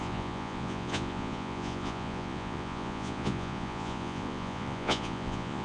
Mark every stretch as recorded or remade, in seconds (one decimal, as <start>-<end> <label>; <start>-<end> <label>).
0.0-5.6 remade